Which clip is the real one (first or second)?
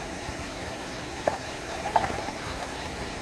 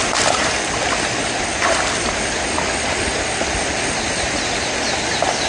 second